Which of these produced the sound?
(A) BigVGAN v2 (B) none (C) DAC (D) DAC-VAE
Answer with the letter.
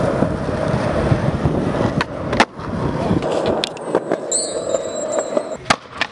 B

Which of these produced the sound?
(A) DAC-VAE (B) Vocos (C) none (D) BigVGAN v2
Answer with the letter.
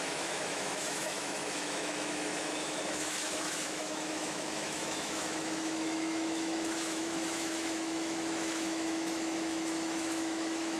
A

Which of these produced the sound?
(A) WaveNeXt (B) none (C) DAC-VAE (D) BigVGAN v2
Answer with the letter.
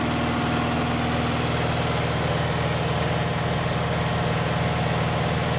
B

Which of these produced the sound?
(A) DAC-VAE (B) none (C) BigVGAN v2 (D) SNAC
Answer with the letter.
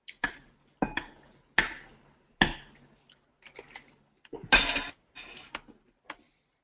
B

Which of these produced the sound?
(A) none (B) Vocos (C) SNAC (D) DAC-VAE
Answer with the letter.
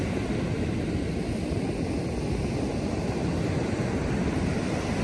A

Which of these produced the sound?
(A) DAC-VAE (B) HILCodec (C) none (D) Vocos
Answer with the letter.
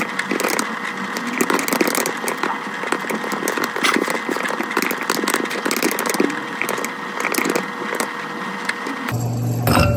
C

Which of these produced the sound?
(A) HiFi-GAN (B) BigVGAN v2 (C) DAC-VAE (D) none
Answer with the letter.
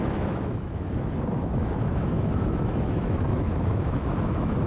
C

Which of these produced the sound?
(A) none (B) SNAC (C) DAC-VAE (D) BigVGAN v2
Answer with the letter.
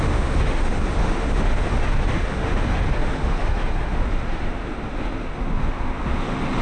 C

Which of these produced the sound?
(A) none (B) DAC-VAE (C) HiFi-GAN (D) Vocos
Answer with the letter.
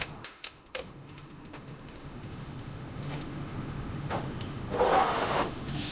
B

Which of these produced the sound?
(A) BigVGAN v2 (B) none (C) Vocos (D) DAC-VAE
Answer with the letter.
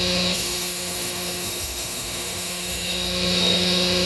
D